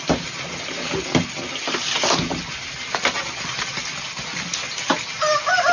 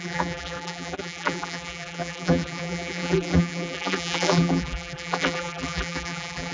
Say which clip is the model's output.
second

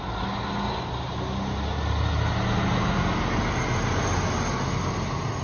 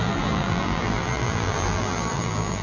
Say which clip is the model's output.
second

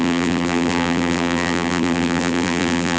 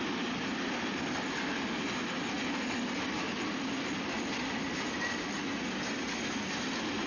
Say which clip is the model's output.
first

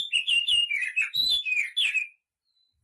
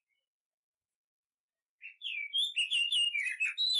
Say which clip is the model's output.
first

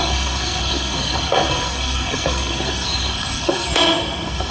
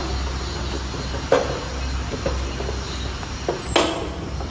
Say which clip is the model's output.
first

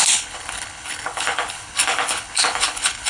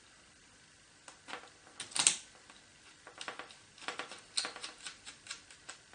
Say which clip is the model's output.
first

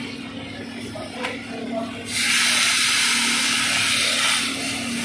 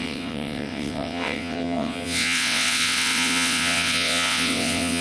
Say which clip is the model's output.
second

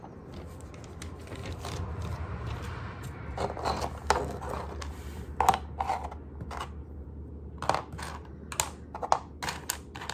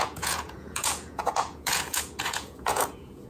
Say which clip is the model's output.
second